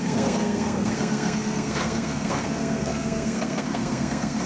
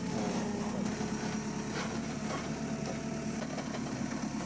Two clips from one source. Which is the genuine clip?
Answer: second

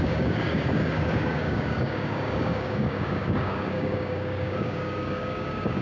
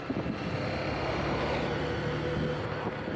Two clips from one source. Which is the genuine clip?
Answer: second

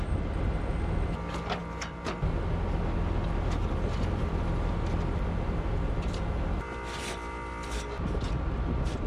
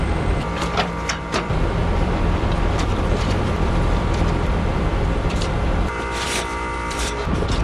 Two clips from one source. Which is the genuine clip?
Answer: first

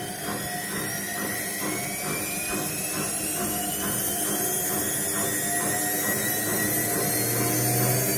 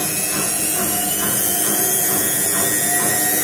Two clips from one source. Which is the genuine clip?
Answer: first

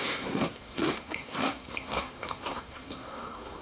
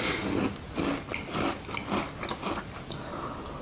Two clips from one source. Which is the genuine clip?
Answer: second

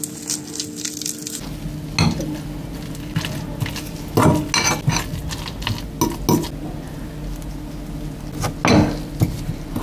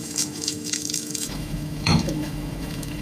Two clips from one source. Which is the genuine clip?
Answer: first